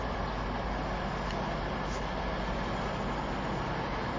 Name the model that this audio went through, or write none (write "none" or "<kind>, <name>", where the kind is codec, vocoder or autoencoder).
none